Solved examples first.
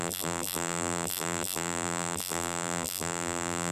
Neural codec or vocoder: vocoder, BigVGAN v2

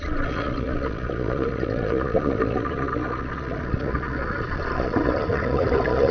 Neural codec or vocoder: vocoder, Vocos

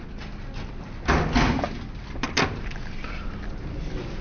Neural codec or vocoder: none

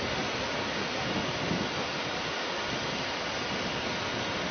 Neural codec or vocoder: none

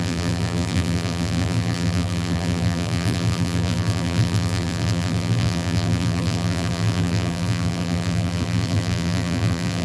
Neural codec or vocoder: vocoder, BigVGAN v2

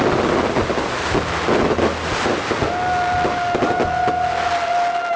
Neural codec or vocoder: none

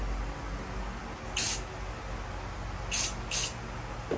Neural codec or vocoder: none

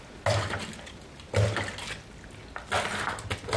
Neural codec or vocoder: none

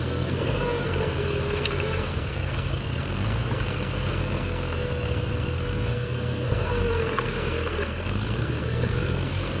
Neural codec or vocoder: codec, SNAC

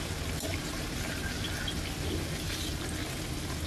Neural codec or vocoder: none